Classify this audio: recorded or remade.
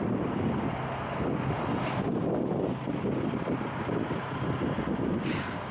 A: recorded